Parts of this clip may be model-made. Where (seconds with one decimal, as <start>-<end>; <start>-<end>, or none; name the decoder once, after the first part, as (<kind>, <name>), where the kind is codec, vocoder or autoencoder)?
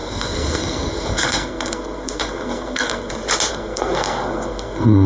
0.0-3.1 (codec, SNAC); 3.5-5.1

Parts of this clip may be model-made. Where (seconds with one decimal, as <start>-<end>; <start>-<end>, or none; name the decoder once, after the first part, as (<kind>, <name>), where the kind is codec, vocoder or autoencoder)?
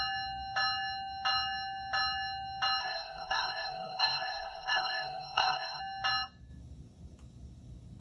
2.8-5.8 (codec, SNAC)